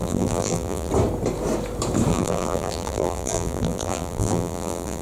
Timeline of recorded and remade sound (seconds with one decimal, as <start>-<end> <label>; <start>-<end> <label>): 0.0-0.9 remade; 0.9-2.1 recorded; 2.1-5.0 remade